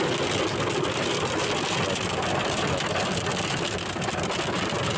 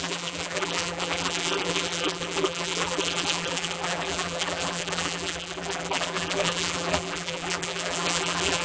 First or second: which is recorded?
first